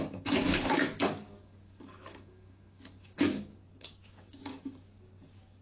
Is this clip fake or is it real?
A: fake